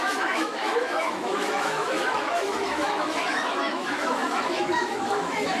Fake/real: fake